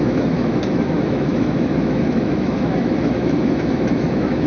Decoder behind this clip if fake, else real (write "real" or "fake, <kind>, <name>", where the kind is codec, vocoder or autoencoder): fake, autoencoder, DAC-VAE